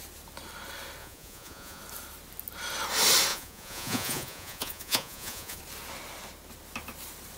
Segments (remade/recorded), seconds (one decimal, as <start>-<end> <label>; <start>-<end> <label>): 0.0-1.0 recorded; 1.0-1.8 remade; 1.8-3.3 recorded; 3.3-5.6 remade; 5.6-7.4 recorded